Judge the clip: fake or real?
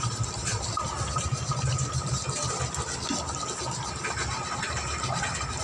real